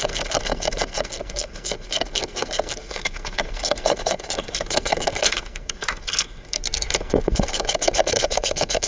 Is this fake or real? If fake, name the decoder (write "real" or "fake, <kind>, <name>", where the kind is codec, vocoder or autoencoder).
fake, codec, SNAC